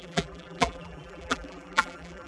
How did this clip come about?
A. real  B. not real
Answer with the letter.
B